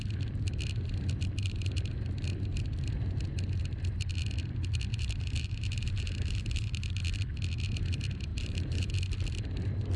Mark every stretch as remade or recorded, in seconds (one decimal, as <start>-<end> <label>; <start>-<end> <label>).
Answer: 0.0-4.9 recorded; 4.9-7.0 remade; 7.0-8.3 recorded; 8.3-8.9 remade; 8.9-10.0 recorded